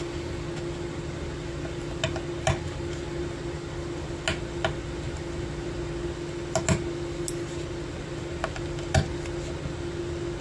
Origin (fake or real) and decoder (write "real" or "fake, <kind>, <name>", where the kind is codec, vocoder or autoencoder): real